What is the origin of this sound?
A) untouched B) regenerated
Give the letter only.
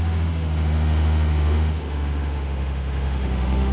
B